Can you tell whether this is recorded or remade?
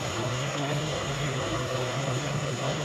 remade